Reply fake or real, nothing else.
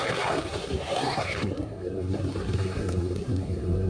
fake